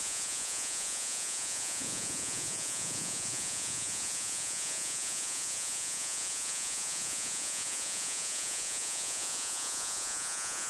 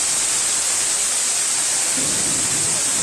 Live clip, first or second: second